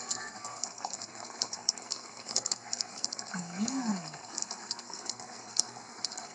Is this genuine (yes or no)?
no